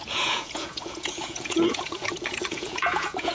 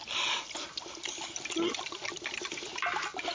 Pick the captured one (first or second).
second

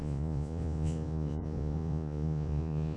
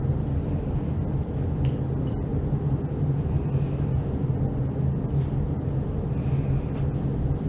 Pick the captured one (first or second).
second